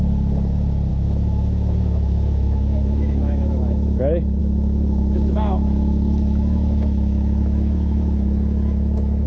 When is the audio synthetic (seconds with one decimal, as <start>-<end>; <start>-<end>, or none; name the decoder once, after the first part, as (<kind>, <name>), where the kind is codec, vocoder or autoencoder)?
0.9-4.0 (autoencoder, DAC-VAE); 4.4-9.3